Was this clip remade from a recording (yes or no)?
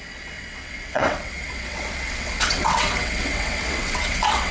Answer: yes